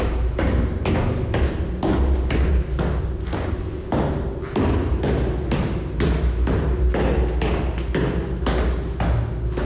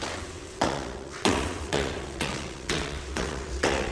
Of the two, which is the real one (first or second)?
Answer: first